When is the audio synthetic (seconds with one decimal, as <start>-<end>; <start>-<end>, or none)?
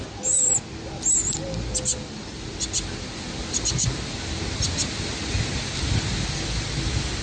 none